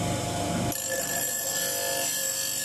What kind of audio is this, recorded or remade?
recorded